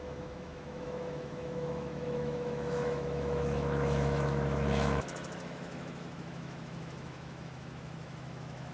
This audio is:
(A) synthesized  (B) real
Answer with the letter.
A